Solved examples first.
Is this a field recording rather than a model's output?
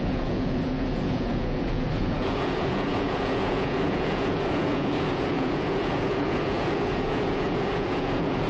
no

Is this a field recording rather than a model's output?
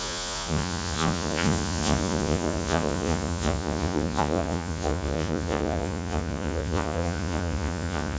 no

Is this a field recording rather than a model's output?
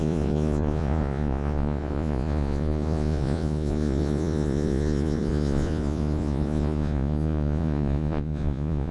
no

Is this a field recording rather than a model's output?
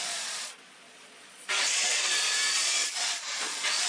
no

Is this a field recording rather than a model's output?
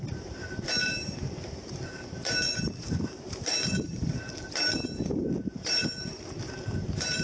no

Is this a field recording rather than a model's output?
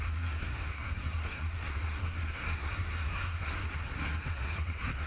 no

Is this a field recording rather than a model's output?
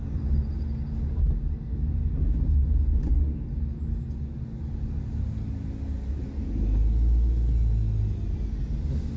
yes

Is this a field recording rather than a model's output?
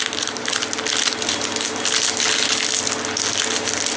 yes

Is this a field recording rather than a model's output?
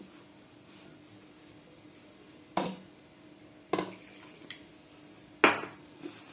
yes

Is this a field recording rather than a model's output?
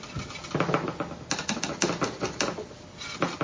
yes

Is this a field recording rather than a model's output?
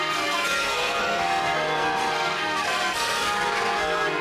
no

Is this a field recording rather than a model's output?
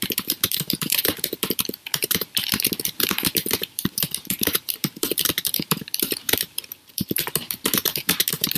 no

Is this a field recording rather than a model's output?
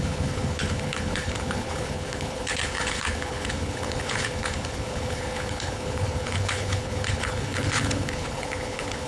no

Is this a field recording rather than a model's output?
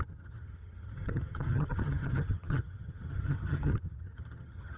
no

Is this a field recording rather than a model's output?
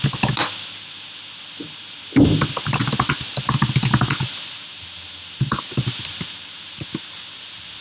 yes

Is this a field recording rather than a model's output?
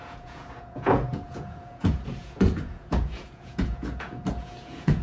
no